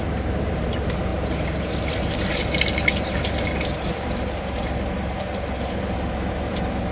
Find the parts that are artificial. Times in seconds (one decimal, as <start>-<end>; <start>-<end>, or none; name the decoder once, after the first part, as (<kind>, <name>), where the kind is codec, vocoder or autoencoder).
0.0-6.9 (vocoder, BigVGAN v2)